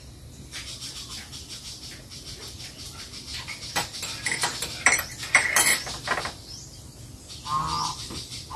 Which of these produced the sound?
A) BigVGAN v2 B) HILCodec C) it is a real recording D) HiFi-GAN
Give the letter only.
A